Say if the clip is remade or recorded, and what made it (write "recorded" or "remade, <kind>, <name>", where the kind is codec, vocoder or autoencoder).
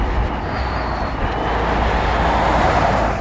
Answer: recorded